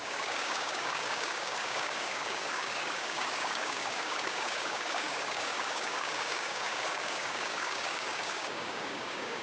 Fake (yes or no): yes